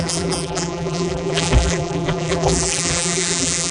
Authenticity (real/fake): fake